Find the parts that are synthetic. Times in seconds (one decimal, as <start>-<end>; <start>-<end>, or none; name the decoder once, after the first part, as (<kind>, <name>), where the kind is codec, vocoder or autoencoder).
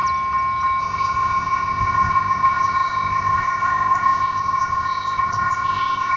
0.8-6.2 (codec, ZipCodec)